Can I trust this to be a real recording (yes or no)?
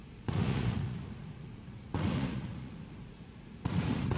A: no